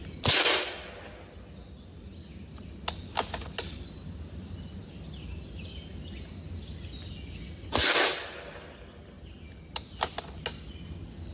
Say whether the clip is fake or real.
real